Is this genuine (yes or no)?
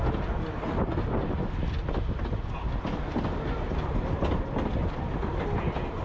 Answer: yes